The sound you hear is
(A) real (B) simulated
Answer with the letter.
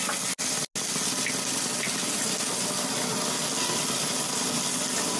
A